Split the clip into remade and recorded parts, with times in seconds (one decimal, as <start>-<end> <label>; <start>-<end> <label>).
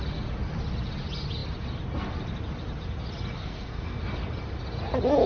0.0-3.4 recorded; 3.4-4.0 remade; 4.0-5.3 recorded